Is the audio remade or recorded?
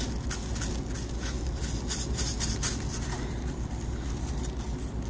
recorded